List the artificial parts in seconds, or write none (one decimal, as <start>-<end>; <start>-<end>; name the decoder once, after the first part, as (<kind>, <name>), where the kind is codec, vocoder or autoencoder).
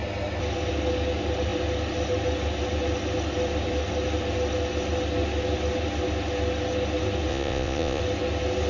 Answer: 7.3-8.0 (vocoder, Vocos)